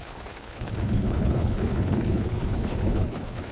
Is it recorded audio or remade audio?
remade